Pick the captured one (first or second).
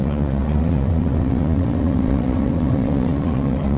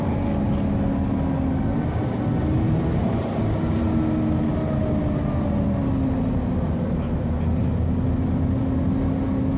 second